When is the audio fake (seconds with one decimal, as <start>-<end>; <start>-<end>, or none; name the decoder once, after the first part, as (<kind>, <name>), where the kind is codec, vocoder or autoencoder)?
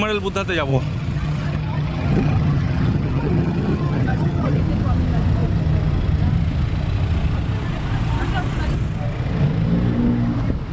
0.7-4.6 (vocoder, HiFi-GAN)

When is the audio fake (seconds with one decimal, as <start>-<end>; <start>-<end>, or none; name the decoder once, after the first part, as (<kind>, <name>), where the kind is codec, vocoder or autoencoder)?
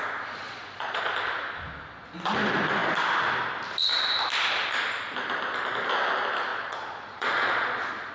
0.4-1.1 (vocoder, Vocos); 6.5-8.1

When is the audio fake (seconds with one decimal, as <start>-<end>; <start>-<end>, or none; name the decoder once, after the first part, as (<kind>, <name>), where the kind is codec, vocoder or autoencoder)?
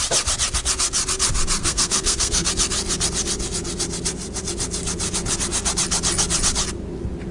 1.6-2.5 (codec, SNAC)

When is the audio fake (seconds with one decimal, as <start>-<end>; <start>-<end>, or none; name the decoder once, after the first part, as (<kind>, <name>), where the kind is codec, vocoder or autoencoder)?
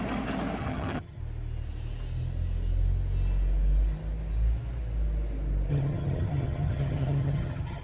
0.6-1.2 (vocoder, HiFi-GAN); 5.7-7.8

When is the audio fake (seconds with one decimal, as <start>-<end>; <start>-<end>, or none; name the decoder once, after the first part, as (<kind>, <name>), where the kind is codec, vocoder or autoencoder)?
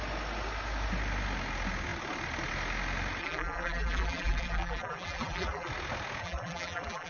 3.2-5.7 (vocoder, BigVGAN v2); 6.2-7.1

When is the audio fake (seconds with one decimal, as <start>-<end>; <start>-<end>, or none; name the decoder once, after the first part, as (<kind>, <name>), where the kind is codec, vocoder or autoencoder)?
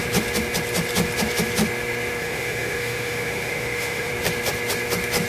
2.2-4.1 (autoencoder, DAC-VAE)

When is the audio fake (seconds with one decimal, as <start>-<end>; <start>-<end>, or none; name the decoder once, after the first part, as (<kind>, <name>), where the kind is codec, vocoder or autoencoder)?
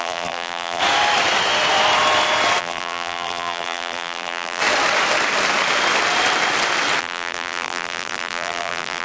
0.0-0.8 (vocoder, BigVGAN v2); 2.6-4.6; 7.0-9.0